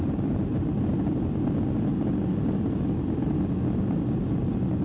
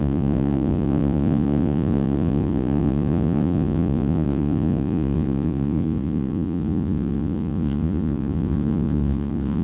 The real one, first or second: first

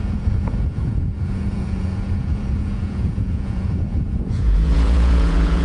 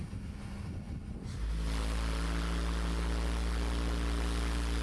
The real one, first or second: second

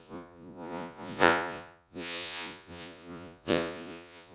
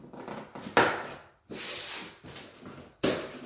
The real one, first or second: second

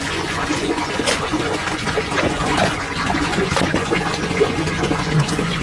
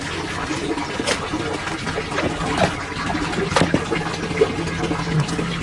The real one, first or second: second